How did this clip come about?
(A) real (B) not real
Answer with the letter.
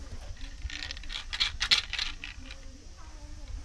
A